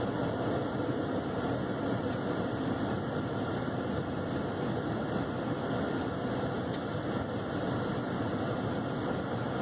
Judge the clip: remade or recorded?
recorded